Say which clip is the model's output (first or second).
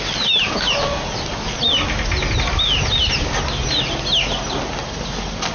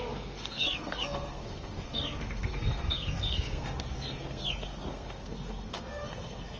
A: second